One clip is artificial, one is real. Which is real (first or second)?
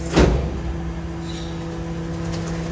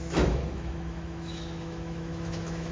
first